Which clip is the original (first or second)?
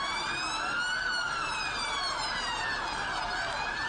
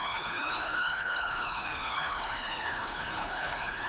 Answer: first